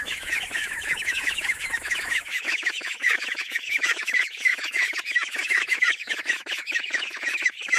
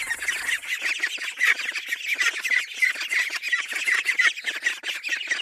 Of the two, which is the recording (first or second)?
second